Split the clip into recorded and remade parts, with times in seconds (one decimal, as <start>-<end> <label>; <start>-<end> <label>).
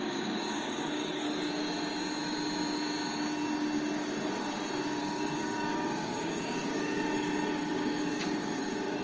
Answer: 0.0-1.2 remade; 1.2-5.0 recorded; 5.0-9.0 remade